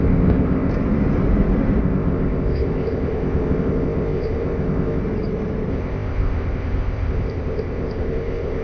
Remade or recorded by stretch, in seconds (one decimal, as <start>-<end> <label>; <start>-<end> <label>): 0.0-0.7 remade; 0.7-1.8 recorded; 1.8-5.0 remade; 5.0-5.7 recorded; 5.7-8.6 remade